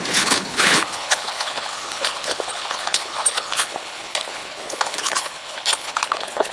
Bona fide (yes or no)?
no